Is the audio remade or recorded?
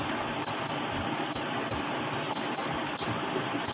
recorded